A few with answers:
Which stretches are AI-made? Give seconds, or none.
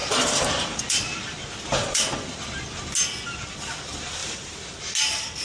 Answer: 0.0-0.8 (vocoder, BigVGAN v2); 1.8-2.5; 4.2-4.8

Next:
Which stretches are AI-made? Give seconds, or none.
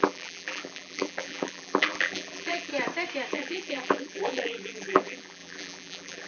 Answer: 0.0-2.7 (vocoder, BigVGAN v2); 3.3-6.3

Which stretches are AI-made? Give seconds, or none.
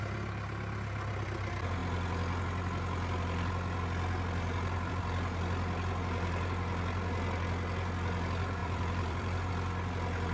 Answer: 8.6-9.5 (vocoder, BigVGAN v2)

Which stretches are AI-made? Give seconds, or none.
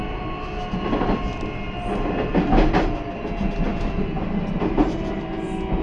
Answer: 3.7-5.3 (vocoder, BigVGAN v2)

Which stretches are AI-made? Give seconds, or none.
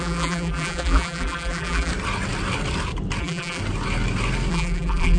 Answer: 0.0-1.9 (vocoder, BigVGAN v2); 3.2-3.6; 4.5-5.2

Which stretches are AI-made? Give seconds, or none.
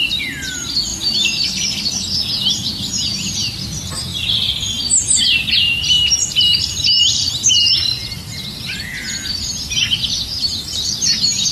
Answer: none